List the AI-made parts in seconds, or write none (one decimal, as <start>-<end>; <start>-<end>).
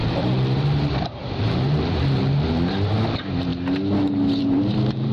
0.0-3.5; 4.4-5.1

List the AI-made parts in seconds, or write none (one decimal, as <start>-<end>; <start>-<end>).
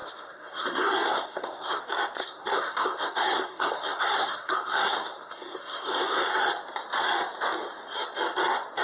0.0-1.8; 2.2-6.3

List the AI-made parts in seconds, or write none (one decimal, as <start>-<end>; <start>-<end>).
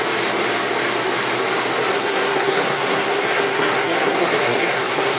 1.9-5.2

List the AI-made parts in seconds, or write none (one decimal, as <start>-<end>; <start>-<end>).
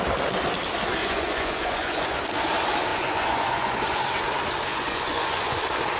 1.0-2.2; 2.9-4.0; 4.7-5.6